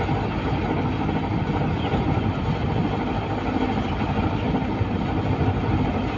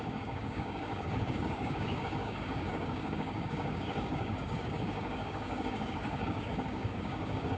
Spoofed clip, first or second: second